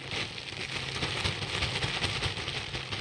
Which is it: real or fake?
real